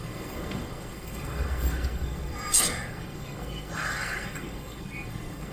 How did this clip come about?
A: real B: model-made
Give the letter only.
B